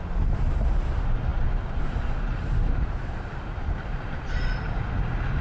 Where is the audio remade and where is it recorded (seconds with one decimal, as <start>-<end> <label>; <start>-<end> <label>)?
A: 0.0-5.4 recorded